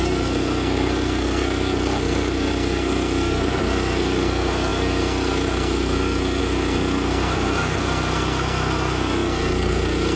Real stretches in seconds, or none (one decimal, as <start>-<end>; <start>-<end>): none